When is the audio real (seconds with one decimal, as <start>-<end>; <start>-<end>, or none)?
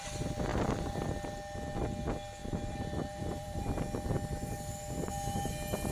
0.0-2.4; 3.8-5.9